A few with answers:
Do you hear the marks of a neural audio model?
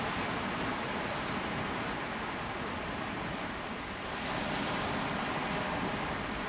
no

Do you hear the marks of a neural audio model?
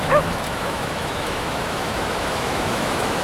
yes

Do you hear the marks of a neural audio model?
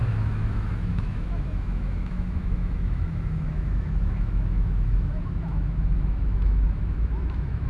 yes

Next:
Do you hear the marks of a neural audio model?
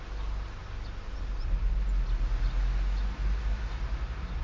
no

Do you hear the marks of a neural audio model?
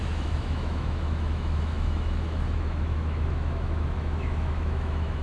yes